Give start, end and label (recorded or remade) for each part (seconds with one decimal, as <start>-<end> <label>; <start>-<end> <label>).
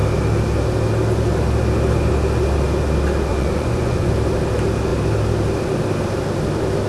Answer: 0.0-3.3 recorded; 3.3-4.1 remade; 4.1-6.9 recorded